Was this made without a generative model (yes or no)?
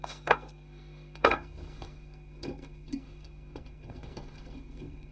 no